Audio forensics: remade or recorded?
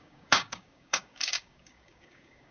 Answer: remade